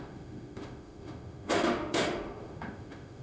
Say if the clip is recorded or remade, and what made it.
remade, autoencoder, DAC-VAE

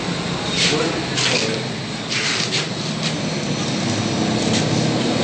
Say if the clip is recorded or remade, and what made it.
recorded